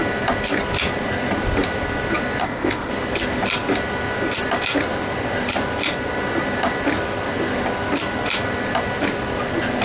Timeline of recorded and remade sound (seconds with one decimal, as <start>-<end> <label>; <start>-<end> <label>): 0.0-2.4 recorded; 2.4-2.9 remade; 2.9-9.8 recorded

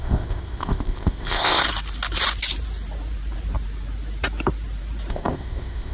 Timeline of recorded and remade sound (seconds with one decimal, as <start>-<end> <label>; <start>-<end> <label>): 0.0-1.6 remade; 1.6-5.1 recorded; 5.1-5.9 remade

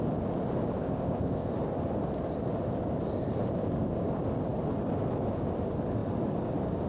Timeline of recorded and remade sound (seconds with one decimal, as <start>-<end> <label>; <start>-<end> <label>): 0.0-0.8 recorded; 0.8-1.5 remade; 1.5-6.9 recorded

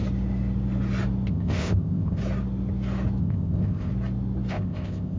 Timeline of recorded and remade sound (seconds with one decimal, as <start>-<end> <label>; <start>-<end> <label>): 0.0-1.3 recorded; 1.3-2.2 remade; 2.2-3.2 recorded; 3.2-3.9 remade; 3.9-4.5 recorded; 4.5-5.2 remade

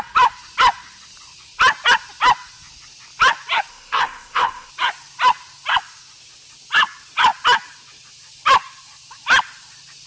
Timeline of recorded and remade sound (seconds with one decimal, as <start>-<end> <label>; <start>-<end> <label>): 0.0-3.7 recorded; 3.7-4.7 remade; 4.7-10.1 recorded

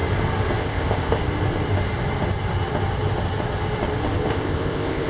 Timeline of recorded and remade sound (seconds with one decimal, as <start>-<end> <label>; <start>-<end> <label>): 0.0-0.6 recorded; 0.6-1.2 remade; 1.2-4.3 recorded; 4.3-5.1 remade

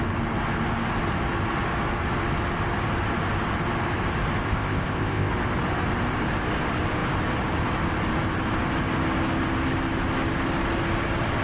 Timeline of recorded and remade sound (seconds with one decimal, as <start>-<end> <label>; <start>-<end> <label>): 0.0-4.4 recorded; 4.4-5.3 remade; 5.3-11.4 recorded